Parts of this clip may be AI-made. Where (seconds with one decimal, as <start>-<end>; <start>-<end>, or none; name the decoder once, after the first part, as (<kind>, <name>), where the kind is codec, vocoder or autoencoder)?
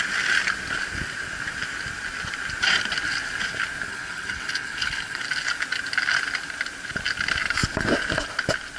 3.9-5.2 (codec, HILCodec)